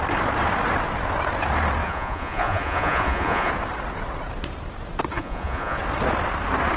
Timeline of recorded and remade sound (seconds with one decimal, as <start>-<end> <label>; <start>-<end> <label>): 0.0-1.8 recorded; 1.8-3.5 remade; 3.5-5.1 recorded; 5.1-5.8 remade; 5.8-6.8 recorded

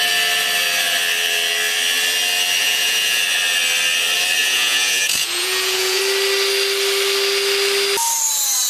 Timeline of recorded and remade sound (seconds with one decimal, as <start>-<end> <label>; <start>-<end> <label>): 0.0-2.6 recorded; 2.6-3.2 remade; 3.2-4.4 recorded; 4.4-6.0 remade; 6.0-8.7 recorded